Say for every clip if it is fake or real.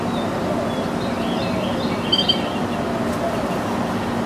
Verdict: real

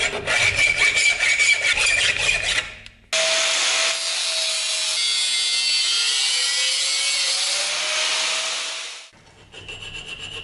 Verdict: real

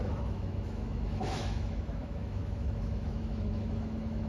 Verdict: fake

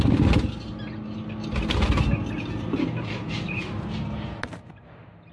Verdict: real